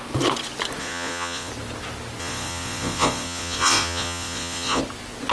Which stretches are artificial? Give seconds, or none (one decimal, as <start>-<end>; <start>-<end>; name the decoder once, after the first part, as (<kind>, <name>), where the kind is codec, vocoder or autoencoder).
0.8-1.5 (vocoder, Vocos); 2.2-4.8